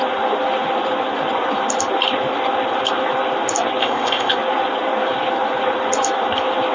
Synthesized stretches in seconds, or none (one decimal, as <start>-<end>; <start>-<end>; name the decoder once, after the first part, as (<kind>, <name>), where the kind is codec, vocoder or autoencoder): 3.8-4.3 (codec, ZipCodec)